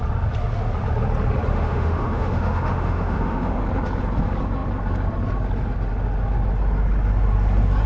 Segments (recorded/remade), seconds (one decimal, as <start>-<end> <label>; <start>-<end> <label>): 0.0-1.5 recorded; 1.5-3.6 remade; 3.6-7.9 recorded